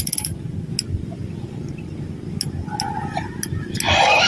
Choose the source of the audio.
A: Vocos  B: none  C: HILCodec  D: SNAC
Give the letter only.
B